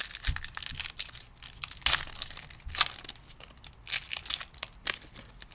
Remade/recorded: recorded